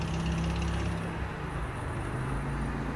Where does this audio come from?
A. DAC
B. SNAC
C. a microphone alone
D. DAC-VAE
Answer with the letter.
C